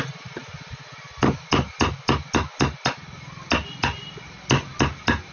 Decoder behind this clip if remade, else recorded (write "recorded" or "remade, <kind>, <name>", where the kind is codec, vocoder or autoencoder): recorded